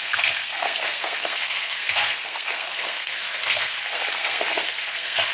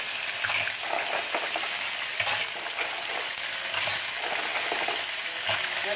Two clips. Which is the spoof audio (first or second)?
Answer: first